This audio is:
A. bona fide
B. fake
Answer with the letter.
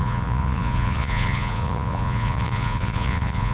B